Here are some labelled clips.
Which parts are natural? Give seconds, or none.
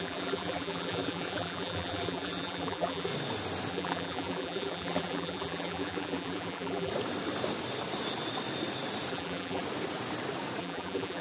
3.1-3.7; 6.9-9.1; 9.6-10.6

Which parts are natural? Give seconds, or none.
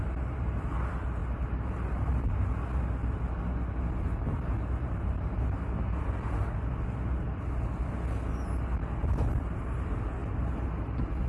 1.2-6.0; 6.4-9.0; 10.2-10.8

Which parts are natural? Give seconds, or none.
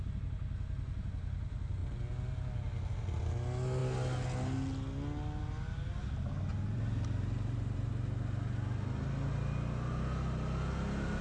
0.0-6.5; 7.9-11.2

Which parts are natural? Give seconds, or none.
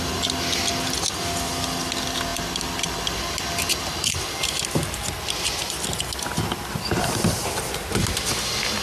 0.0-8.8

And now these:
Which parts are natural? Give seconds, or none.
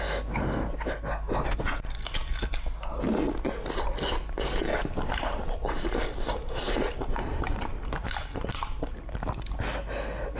0.0-4.7; 9.0-10.4